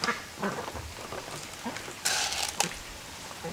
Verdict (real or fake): real